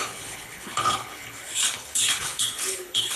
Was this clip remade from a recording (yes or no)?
yes